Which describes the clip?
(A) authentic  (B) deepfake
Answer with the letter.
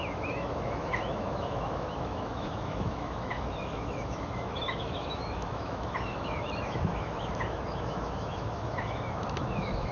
B